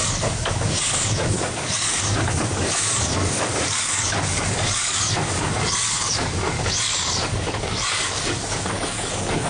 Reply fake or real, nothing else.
fake